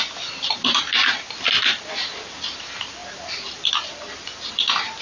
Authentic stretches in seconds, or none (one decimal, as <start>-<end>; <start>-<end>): 0.0-5.0